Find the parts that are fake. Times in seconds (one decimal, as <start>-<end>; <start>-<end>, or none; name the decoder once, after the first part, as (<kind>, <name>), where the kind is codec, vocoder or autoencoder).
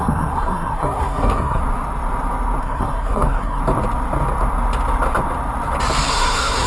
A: 0.0-1.6 (codec, SNAC); 2.6-3.6; 6.1-6.7